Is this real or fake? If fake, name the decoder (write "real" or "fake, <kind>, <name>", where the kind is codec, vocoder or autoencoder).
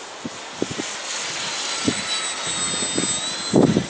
real